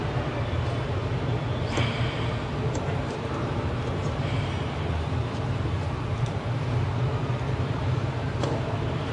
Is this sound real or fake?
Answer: fake